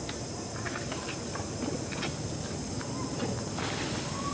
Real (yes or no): yes